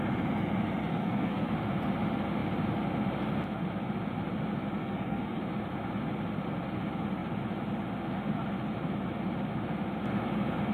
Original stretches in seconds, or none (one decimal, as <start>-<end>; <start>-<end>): 0.0-0.9; 1.5-4.8; 5.4-10.7